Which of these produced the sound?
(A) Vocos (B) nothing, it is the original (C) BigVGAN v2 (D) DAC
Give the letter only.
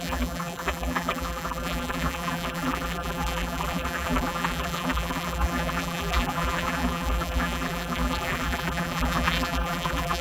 C